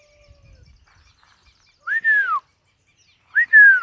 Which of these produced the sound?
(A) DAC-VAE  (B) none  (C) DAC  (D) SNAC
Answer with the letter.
B